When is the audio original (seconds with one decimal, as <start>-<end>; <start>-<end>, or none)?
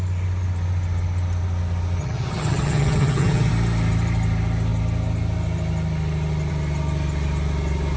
0.0-2.0; 3.5-8.0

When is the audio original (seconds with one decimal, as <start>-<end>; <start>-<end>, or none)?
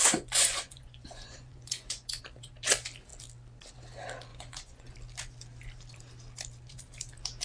2.2-4.3; 4.9-7.4